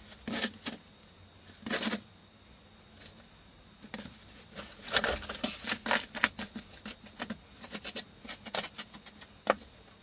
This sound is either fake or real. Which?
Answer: real